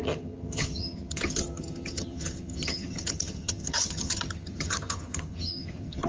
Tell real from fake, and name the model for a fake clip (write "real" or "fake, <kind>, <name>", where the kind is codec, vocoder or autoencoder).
fake, vocoder, HiFi-GAN